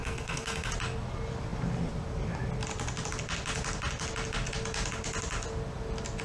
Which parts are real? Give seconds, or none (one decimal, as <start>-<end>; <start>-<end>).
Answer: 0.7-6.2